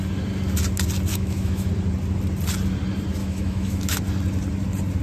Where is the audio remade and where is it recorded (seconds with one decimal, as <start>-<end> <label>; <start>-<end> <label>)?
0.0-1.1 recorded; 1.1-1.7 remade; 1.7-3.2 recorded; 3.2-4.0 remade; 4.0-5.0 recorded